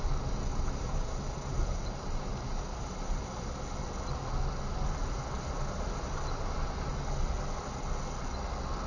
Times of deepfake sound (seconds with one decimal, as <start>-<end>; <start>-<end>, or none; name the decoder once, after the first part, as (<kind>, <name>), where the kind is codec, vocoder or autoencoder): 0.5-3.6 (vocoder, BigVGAN v2); 5.0-6.9